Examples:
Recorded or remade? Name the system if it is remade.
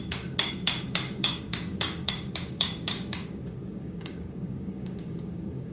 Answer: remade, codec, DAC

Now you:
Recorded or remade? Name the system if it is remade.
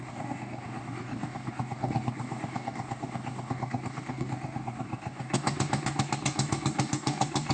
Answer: remade, codec, DAC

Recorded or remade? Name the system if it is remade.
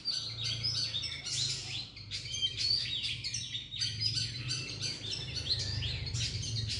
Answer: recorded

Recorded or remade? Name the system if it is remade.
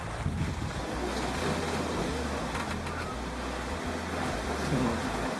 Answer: recorded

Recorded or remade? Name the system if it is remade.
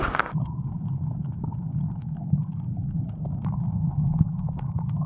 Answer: remade, codec, DAC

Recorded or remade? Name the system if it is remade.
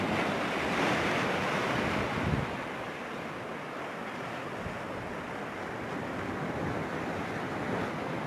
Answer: recorded